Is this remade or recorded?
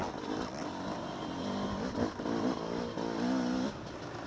recorded